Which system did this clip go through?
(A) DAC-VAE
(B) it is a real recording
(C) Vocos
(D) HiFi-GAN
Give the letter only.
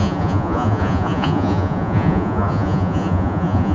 C